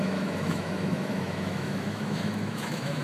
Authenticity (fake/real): fake